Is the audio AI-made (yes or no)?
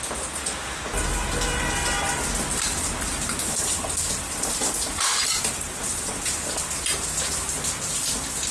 no